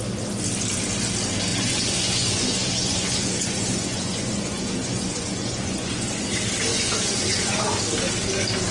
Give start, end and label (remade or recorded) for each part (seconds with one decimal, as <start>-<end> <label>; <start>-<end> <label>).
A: 0.0-1.5 recorded; 1.5-6.3 remade; 6.3-6.7 recorded; 6.7-7.8 remade; 7.8-8.7 recorded